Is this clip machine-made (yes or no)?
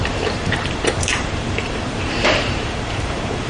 yes